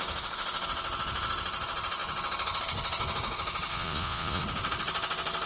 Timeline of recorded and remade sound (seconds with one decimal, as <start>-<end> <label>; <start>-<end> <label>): 0.0-3.7 recorded; 3.7-4.4 remade; 4.4-5.5 recorded